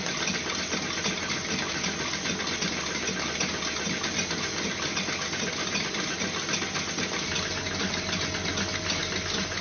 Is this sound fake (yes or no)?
no